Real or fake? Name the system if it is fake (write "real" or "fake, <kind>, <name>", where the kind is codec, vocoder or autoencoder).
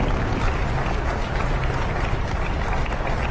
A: real